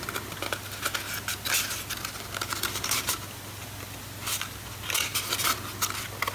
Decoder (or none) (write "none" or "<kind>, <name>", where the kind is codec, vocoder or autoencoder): none